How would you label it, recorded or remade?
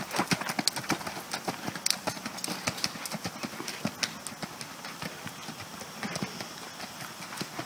recorded